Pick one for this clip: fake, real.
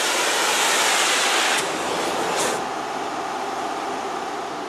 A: real